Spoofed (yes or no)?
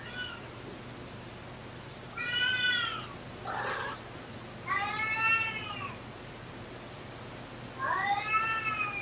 no